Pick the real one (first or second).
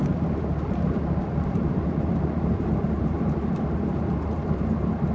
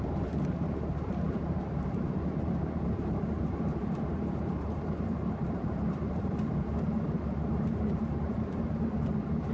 first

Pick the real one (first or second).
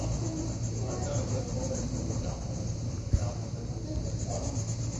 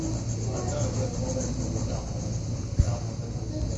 second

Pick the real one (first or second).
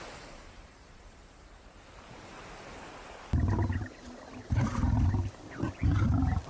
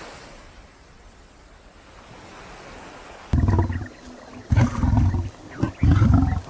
second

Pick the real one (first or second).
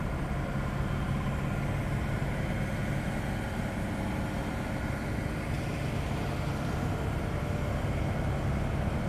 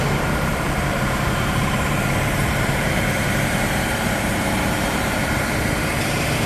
first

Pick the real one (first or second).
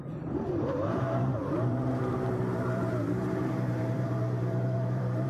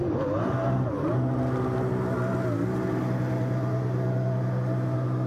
second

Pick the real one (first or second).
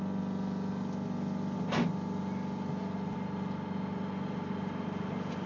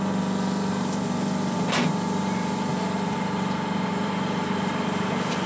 first